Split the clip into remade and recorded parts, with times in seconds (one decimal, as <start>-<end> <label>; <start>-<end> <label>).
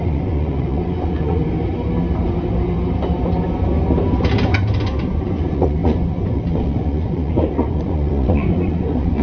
0.0-1.4 remade; 1.4-5.0 recorded; 5.0-9.2 remade